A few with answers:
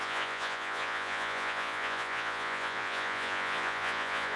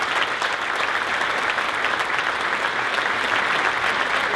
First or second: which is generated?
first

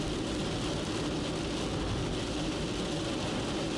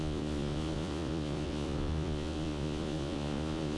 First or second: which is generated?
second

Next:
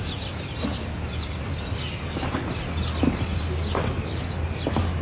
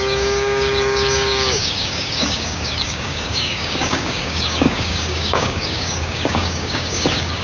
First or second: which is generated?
second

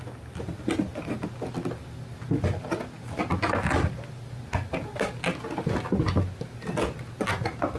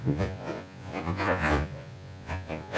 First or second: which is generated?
second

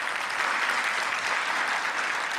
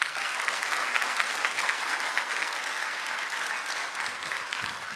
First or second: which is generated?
second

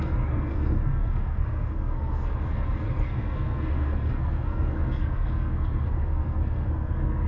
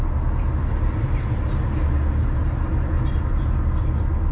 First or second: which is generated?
first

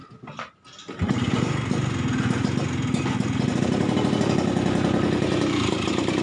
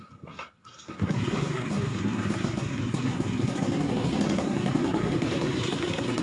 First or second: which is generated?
second